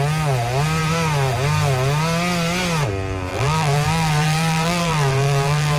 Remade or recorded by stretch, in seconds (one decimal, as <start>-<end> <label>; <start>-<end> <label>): 0.0-3.3 recorded; 3.3-5.8 remade